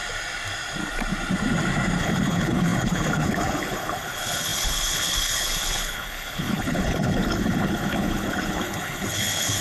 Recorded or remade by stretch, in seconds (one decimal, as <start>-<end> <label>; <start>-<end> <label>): 0.0-2.0 recorded; 2.0-9.6 remade